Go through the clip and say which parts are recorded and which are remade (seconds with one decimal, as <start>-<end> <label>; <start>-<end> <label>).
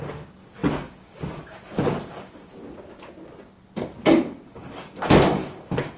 0.0-2.5 remade; 2.5-4.5 recorded; 4.5-6.0 remade